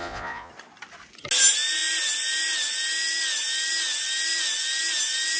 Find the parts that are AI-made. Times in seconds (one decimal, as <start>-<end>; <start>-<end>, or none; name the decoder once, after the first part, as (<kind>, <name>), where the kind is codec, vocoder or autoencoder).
0.0-0.5 (vocoder, Vocos)